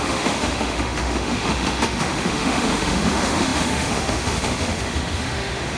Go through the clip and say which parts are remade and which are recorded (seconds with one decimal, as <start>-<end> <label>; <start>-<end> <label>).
0.0-5.8 remade